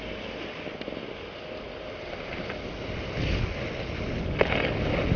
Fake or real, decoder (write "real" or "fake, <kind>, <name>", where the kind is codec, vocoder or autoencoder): real